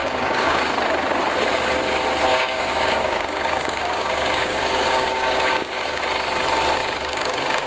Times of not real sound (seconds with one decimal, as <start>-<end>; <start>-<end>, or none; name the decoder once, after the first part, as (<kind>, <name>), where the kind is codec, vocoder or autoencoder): 0.0-0.6 (codec, DAC); 2.3-6.0; 6.8-7.7